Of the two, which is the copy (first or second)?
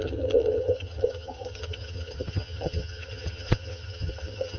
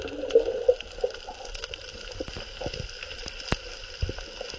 first